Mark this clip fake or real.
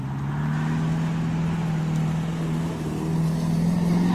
real